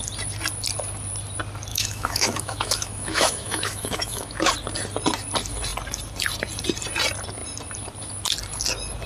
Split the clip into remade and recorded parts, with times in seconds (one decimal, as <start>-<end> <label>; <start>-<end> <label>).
0.0-1.7 recorded; 1.7-4.5 remade; 4.5-9.1 recorded